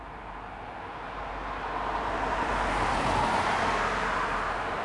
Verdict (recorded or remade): remade